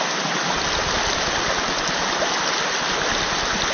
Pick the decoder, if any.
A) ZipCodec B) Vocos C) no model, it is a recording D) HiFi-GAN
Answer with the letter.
C